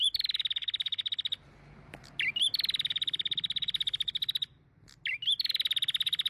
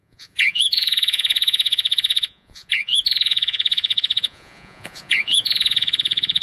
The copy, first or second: second